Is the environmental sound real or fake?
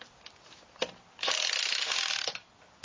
real